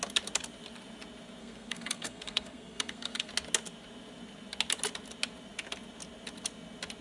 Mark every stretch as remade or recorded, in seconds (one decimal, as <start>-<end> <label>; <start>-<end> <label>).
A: 0.0-1.4 recorded; 1.4-3.3 remade; 3.3-7.0 recorded